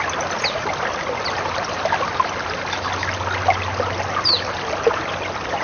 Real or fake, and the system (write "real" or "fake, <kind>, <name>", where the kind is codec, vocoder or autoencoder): real